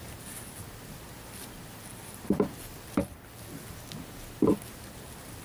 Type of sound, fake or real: real